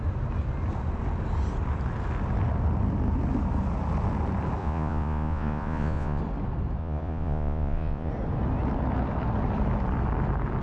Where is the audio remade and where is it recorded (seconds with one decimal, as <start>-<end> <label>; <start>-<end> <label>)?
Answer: 0.0-4.6 recorded; 4.6-6.2 remade; 6.2-6.8 recorded; 6.8-8.1 remade; 8.1-10.6 recorded